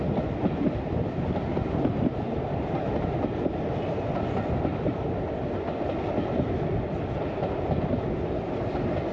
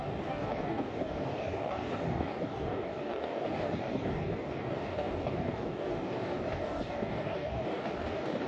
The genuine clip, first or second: first